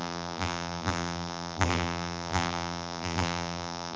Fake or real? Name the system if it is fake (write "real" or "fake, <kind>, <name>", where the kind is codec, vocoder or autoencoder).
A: fake, vocoder, BigVGAN v2